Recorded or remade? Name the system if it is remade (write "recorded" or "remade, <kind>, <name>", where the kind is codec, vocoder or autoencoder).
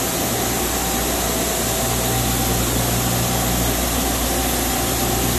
recorded